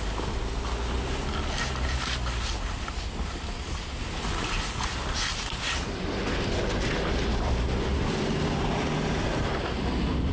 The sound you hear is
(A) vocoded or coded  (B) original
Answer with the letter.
B